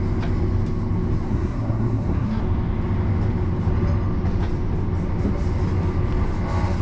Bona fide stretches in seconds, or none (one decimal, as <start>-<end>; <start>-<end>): 0.0-1.3; 2.4-6.8